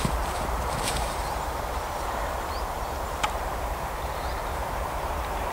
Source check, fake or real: fake